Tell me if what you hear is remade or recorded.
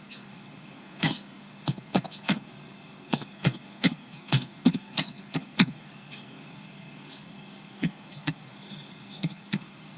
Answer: remade